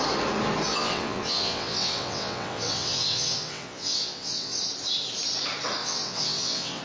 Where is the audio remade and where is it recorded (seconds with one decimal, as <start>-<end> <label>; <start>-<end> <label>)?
0.0-0.7 recorded; 0.7-4.6 remade; 4.6-5.8 recorded; 5.8-6.8 remade